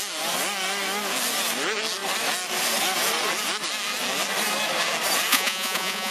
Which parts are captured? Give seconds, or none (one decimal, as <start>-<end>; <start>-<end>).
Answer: 0.0-5.3